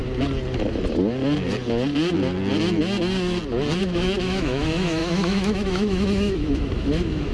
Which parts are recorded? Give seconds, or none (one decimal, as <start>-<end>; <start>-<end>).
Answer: 0.0-3.8